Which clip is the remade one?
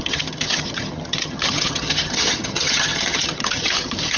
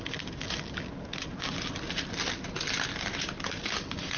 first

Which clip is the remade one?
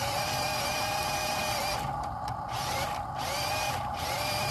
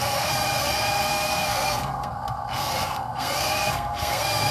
second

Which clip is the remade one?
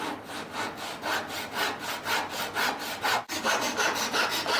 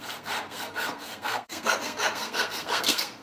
second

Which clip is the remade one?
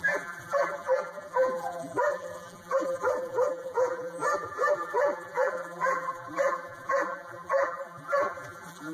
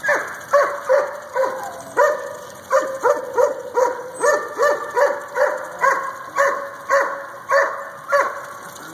first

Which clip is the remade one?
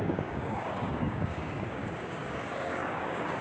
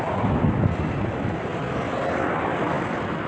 first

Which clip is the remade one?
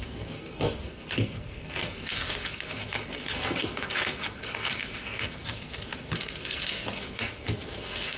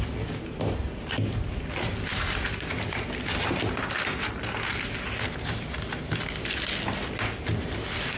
first